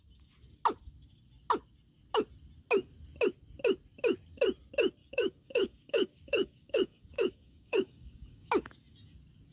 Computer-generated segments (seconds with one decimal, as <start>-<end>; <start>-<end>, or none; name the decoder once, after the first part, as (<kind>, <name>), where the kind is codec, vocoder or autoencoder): 5.0-8.5 (codec, DAC)